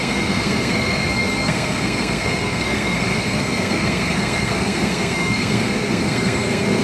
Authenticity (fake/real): fake